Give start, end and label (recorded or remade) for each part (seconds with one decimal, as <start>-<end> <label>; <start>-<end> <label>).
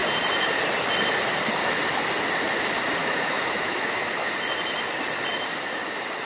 0.0-3.0 recorded; 3.0-4.3 remade; 4.3-6.2 recorded